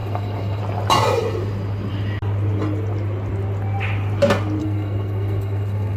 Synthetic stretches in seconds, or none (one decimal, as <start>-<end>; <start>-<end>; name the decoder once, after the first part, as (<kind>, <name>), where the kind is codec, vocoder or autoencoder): 0.0-0.6 (codec, SNAC); 4.6-6.0